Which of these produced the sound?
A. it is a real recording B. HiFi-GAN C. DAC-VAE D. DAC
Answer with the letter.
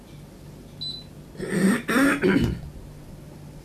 A